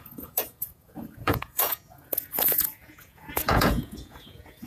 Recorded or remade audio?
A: remade